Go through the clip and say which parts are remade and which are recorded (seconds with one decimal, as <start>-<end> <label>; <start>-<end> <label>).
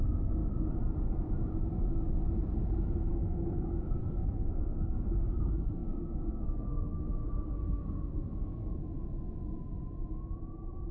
0.0-3.1 recorded; 3.1-3.6 remade; 3.6-4.0 recorded; 4.0-8.7 remade; 8.7-10.9 recorded